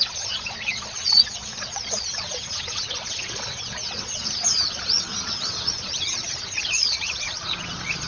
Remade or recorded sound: remade